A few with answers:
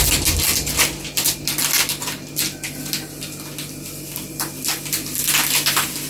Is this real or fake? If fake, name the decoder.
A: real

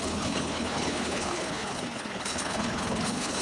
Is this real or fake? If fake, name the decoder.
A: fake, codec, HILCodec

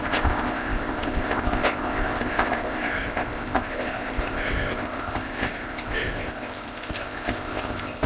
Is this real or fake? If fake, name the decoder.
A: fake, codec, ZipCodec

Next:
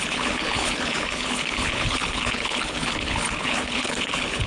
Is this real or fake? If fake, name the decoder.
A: fake, codec, HILCodec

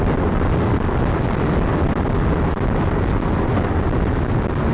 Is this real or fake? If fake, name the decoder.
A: real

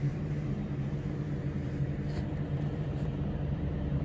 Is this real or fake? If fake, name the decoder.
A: fake, vocoder, BigVGAN v2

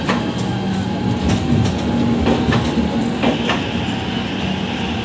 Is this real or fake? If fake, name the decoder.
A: real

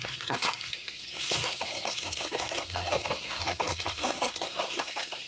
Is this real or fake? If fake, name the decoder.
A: fake, codec, SNAC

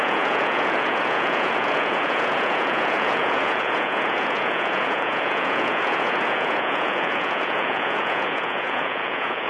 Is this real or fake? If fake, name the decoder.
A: fake, vocoder, Vocos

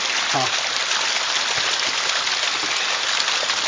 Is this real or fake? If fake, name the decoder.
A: real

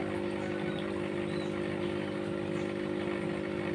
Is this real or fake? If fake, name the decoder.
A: real